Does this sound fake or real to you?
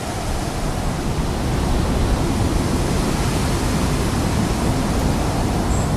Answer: real